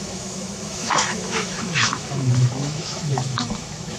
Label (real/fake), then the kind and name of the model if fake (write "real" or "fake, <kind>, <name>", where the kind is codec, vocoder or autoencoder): fake, autoencoder, DAC-VAE